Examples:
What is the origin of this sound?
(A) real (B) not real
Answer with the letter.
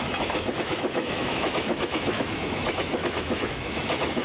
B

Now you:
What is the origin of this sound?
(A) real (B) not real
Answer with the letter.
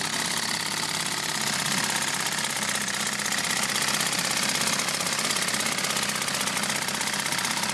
A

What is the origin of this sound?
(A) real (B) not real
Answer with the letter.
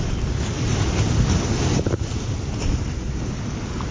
A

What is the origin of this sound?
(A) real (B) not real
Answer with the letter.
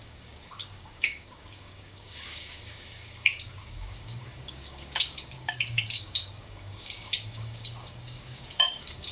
B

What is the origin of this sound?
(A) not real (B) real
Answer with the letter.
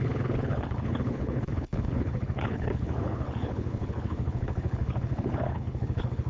A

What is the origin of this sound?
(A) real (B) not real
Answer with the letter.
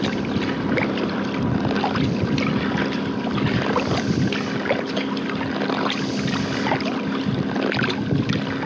A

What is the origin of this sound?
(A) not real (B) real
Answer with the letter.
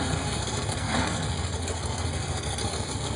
A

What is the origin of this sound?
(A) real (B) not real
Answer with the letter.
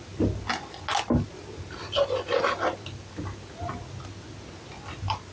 A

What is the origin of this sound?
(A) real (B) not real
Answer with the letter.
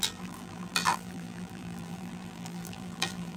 B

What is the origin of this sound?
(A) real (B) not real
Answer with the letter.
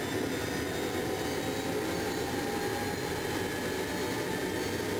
A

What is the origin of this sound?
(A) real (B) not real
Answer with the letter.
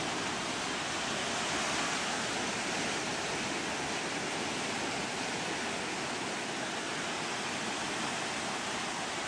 A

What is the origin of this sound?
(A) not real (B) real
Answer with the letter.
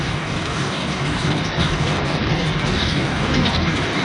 A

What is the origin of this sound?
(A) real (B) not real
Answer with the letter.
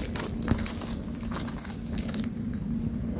A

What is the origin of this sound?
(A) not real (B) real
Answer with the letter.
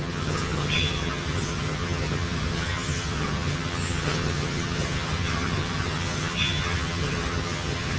A